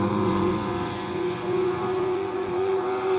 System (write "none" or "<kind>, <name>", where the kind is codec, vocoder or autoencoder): vocoder, Vocos